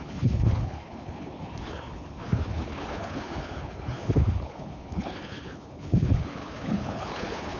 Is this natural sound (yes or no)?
no